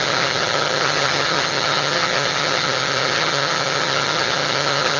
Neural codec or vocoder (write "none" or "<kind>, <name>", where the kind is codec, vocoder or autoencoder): vocoder, HiFi-GAN